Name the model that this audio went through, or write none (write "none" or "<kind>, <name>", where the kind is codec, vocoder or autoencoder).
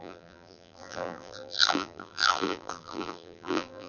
vocoder, BigVGAN v2